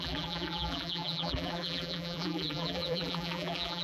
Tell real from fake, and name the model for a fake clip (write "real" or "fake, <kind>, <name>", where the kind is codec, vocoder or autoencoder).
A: fake, vocoder, BigVGAN v2